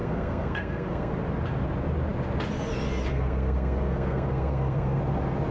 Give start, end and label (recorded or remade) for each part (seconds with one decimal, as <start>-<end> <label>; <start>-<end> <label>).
0.0-1.1 remade; 1.1-3.1 recorded; 3.1-5.0 remade; 5.0-5.5 recorded